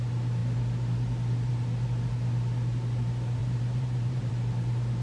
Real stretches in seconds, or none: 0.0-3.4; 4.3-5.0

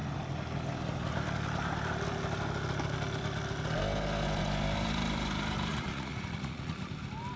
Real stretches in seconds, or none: 0.0-5.7; 6.9-7.4

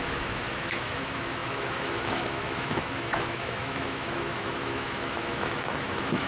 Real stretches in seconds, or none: none

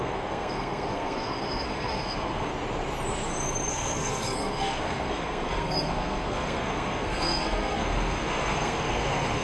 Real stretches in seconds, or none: 2.5-3.7